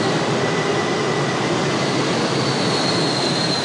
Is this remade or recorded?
recorded